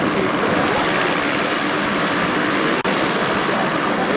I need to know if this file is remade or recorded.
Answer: recorded